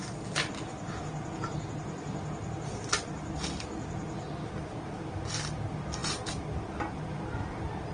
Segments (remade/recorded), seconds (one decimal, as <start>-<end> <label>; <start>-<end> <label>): 0.0-7.9 recorded